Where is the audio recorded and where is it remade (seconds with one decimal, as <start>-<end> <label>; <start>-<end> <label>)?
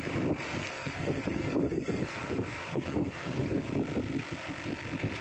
0.0-0.6 recorded; 0.6-3.7 remade; 3.7-5.2 recorded